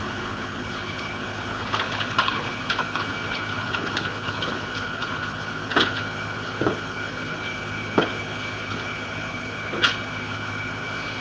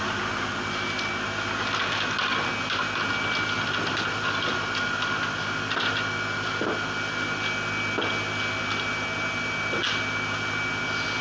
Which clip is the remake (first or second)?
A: first